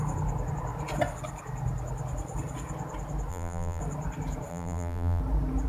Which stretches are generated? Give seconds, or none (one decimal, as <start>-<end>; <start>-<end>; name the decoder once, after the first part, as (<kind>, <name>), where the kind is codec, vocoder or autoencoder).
3.3-3.8 (vocoder, BigVGAN v2); 4.5-5.2